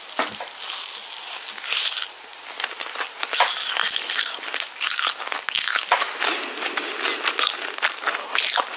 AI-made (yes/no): no